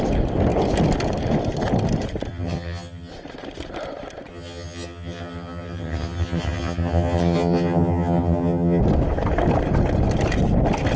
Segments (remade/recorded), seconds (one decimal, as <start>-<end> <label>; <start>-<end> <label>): 0.0-2.3 recorded; 2.3-3.1 remade; 3.1-4.3 recorded; 4.3-8.8 remade; 8.8-11.0 recorded